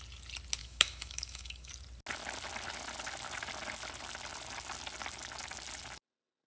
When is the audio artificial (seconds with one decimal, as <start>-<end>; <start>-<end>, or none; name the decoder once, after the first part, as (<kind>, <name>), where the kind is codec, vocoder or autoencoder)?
0.6-1.7 (autoencoder, DAC-VAE)